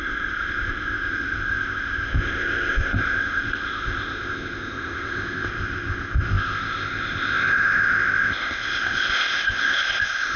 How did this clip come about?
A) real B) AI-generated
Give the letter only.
B